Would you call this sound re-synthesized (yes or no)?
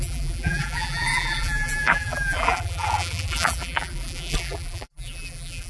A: yes